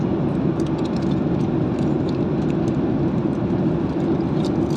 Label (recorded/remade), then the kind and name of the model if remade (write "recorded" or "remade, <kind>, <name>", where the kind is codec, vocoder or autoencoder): recorded